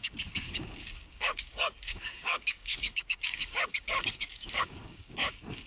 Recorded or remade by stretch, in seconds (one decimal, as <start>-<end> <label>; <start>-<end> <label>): 0.0-5.7 remade